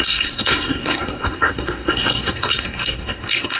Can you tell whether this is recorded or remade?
remade